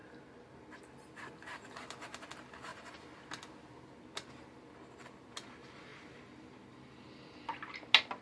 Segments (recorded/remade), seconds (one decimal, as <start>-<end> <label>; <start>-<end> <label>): 0.0-0.8 remade; 0.8-2.7 recorded; 2.7-3.3 remade; 3.3-8.2 recorded